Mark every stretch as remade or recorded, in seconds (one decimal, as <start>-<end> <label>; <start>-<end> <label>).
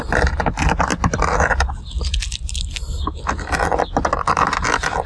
0.0-5.1 recorded